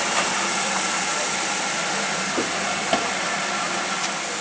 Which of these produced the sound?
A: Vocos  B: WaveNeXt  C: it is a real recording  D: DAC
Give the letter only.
C